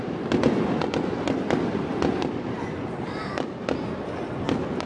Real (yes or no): yes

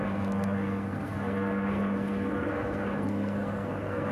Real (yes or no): no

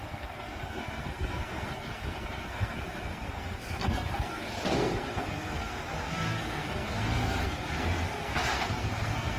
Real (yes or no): no